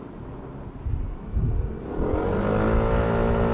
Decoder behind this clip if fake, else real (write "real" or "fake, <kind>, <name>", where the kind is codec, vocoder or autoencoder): real